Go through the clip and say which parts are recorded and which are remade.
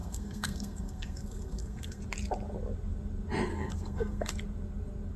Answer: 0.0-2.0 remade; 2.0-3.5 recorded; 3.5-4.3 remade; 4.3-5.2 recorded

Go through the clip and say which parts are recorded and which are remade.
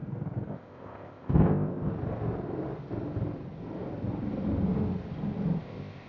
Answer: 0.0-0.5 recorded; 0.5-1.9 remade; 1.9-5.6 recorded; 5.6-6.1 remade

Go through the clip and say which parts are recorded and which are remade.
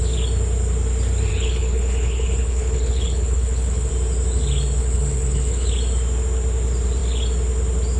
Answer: 0.0-1.3 recorded; 1.3-3.9 remade; 3.9-4.8 recorded; 4.8-5.7 remade; 5.7-8.0 recorded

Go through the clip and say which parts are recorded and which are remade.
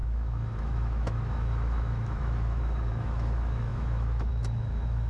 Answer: 0.0-5.1 remade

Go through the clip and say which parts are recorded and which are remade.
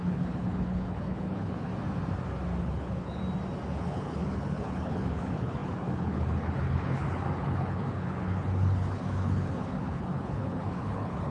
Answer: 0.0-1.7 remade; 1.7-2.6 recorded; 2.6-3.2 remade; 3.2-3.8 recorded; 3.8-11.3 remade